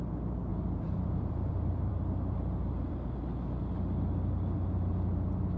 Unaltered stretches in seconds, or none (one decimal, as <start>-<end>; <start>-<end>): 0.0-0.5; 2.9-5.6